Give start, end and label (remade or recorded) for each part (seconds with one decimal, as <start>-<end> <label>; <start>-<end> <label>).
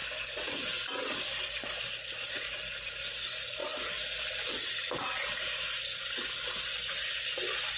0.0-7.8 recorded